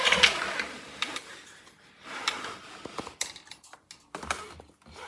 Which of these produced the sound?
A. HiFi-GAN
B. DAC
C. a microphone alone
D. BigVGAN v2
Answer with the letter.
C